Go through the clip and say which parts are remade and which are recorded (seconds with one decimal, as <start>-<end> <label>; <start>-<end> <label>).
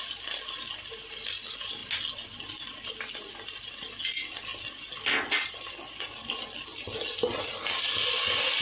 0.0-8.6 recorded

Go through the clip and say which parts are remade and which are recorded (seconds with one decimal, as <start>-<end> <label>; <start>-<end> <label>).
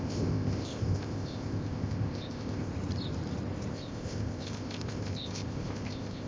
0.0-2.7 remade; 2.7-3.7 recorded; 3.7-6.3 remade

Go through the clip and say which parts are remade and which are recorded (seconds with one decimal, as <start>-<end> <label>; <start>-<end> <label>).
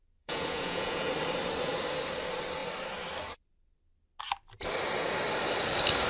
0.0-1.1 remade; 1.1-6.1 recorded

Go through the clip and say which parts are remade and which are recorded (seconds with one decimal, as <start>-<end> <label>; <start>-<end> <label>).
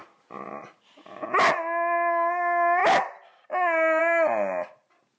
0.0-5.2 recorded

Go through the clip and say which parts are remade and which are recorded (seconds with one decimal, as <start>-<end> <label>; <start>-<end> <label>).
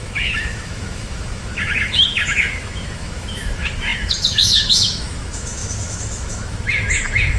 0.0-7.4 remade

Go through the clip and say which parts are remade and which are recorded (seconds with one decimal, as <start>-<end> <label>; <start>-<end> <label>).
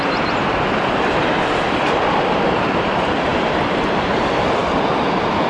0.0-5.5 recorded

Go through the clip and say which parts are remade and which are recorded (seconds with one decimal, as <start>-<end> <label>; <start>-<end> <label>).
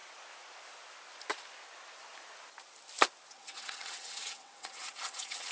0.0-3.3 recorded; 3.3-5.5 remade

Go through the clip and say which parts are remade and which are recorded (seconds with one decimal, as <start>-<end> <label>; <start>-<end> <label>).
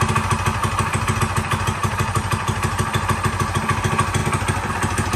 0.0-1.8 recorded; 1.8-3.6 remade; 3.6-5.2 recorded